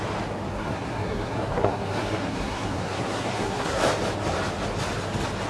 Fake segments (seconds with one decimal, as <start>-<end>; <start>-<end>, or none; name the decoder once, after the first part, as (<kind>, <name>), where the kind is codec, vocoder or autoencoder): 0.5-3.8 (codec, SNAC)